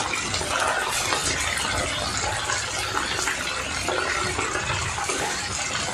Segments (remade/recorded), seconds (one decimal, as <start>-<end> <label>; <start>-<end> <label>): 0.0-4.8 recorded; 4.8-5.4 remade; 5.4-5.9 recorded